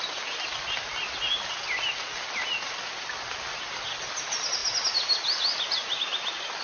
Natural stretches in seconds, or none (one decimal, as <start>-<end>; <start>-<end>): 0.0-6.6